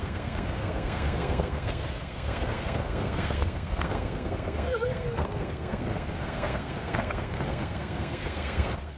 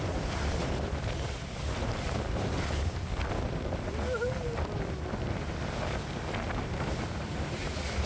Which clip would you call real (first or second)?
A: second